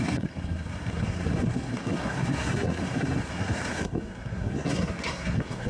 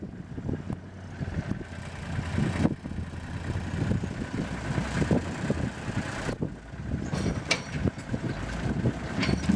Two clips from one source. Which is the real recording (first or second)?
second